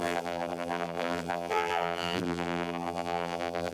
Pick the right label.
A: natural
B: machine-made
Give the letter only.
B